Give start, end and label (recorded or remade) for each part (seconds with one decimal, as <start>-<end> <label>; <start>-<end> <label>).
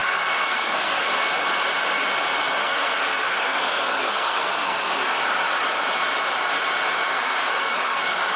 0.0-1.1 remade; 1.1-2.6 recorded; 2.6-4.9 remade; 4.9-7.1 recorded; 7.1-8.4 remade